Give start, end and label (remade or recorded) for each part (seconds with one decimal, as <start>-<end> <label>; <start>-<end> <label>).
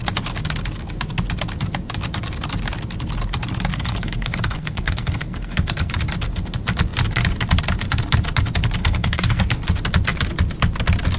0.0-3.7 recorded; 3.7-5.9 remade; 5.9-8.8 recorded; 8.8-9.4 remade; 9.4-11.2 recorded